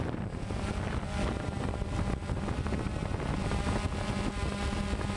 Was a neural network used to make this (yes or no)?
no